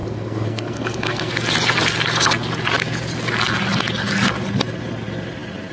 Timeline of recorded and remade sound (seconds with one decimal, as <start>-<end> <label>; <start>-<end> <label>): 0.0-1.3 remade; 1.3-5.7 recorded